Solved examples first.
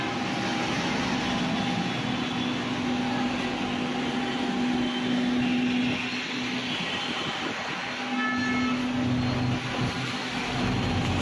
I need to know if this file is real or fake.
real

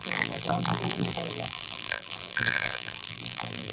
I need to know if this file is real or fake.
fake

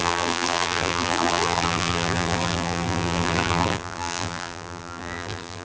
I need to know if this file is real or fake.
fake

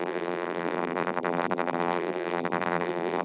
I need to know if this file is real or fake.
fake